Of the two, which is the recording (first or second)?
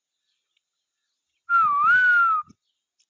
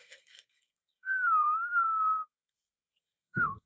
first